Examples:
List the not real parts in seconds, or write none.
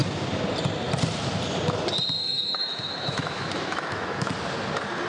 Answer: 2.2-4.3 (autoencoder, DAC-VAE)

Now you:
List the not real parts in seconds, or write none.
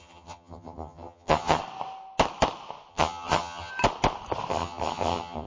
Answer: 0.0-1.6 (vocoder, HiFi-GAN); 2.9-3.7; 4.5-5.5